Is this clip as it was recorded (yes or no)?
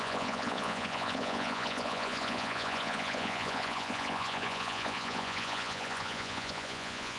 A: no